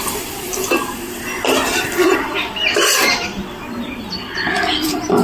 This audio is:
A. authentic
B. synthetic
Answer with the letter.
B